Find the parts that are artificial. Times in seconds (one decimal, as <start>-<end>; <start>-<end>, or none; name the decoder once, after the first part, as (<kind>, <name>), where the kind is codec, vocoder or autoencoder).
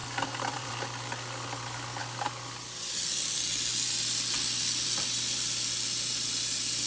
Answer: 0.0-0.7 (vocoder, BigVGAN v2)